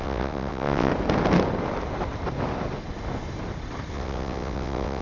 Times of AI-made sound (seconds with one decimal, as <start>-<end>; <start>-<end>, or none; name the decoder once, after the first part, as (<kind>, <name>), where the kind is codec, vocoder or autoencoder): 0.0-0.9 (vocoder, WaveNeXt); 3.9-5.0